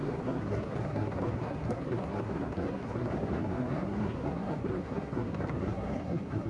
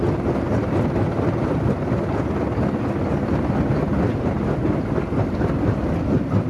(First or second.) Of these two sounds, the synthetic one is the first